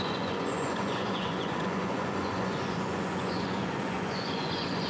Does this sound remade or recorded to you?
remade